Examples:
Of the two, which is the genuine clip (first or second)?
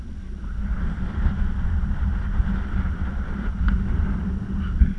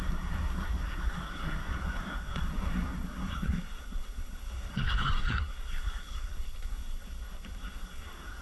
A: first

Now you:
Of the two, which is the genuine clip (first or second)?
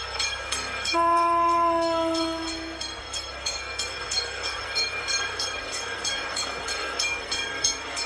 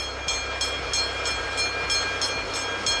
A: second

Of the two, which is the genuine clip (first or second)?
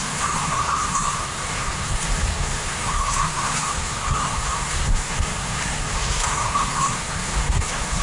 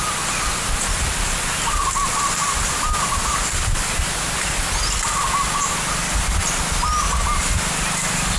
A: second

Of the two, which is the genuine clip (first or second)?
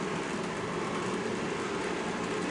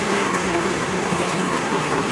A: first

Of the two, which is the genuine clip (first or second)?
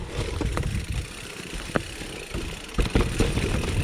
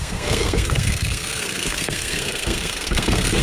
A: first